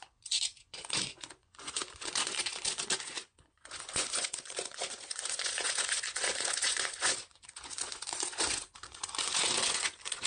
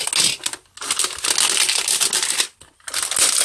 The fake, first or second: first